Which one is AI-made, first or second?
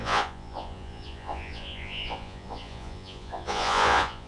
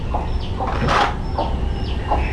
first